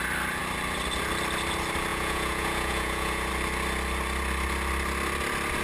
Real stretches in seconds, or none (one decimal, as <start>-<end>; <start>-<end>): 0.0-1.9; 3.3-5.6